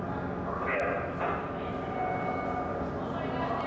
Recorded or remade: recorded